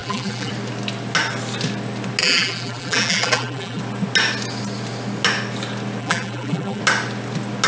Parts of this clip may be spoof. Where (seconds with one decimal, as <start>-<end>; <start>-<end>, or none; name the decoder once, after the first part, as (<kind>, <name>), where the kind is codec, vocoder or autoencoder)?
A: 0.0-0.5 (vocoder, BigVGAN v2); 2.2-3.8; 6.0-6.8